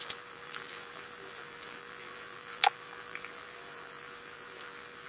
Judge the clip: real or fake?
fake